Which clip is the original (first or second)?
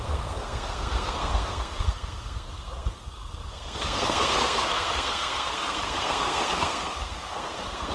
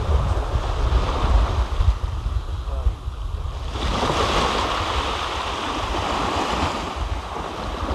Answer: second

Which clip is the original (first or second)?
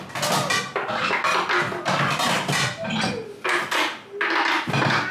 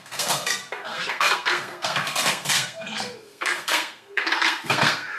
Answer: first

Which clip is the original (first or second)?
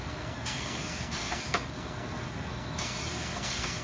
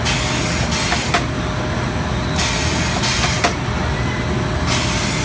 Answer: second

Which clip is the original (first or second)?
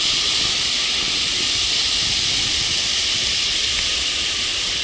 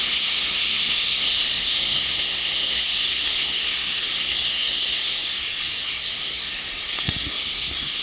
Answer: first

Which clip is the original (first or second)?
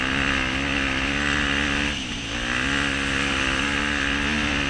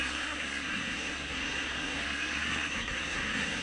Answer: first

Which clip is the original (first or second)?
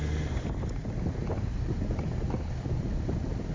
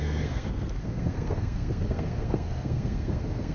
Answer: first